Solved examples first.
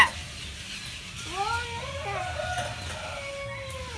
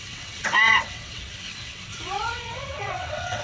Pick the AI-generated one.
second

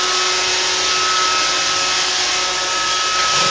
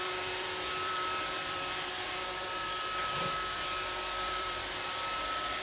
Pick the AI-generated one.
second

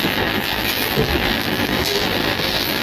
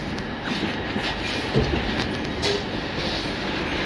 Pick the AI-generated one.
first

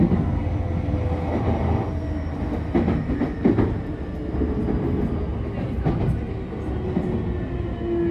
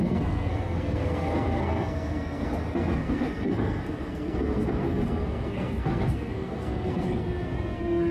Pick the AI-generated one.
second